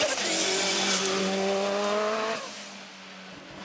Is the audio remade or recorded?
recorded